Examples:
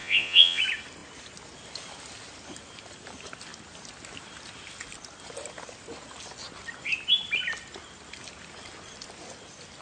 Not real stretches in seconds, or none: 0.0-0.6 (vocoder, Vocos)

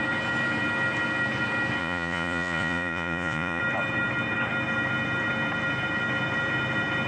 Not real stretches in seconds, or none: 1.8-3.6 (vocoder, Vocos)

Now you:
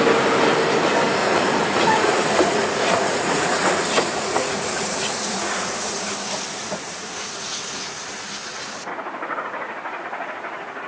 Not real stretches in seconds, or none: 1.2-6.0 (vocoder, Vocos); 6.6-8.0; 8.9-10.0

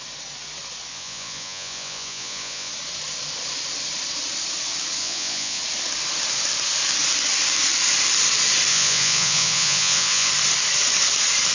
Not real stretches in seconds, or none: 0.9-2.7 (vocoder, Vocos); 5.0-5.6; 8.7-10.3

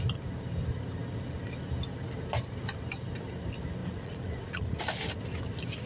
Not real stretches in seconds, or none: 3.8-4.8 (vocoder, Vocos)

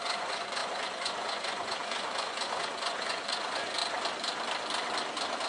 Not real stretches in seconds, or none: 0.0-3.8 (vocoder, Vocos)

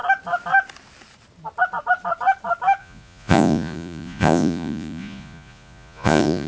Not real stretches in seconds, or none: 2.8-6.5 (vocoder, Vocos)